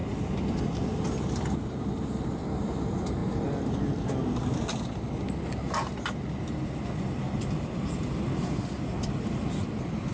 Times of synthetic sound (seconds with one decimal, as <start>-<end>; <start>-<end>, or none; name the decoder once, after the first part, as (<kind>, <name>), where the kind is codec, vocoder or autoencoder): none